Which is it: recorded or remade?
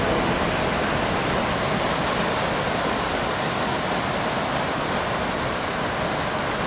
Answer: recorded